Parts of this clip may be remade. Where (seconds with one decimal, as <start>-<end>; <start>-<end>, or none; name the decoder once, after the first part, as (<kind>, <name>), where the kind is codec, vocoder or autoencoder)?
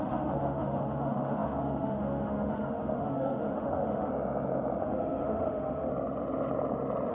0.0-4.1 (autoencoder, DAC-VAE); 4.8-5.9